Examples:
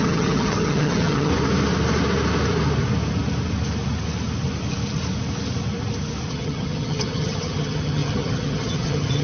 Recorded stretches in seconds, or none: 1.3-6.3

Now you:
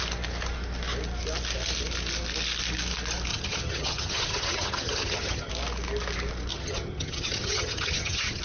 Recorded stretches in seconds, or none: 0.0-3.3; 5.5-6.5

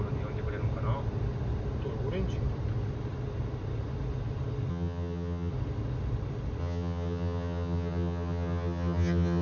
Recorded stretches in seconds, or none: 0.0-4.7; 5.5-6.6

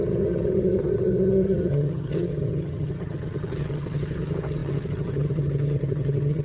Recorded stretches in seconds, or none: none

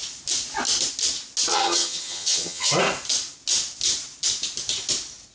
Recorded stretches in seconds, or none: 0.0-1.5; 2.7-5.3

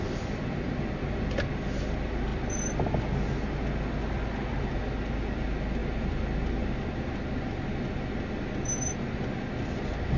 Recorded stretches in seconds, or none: 0.0-10.2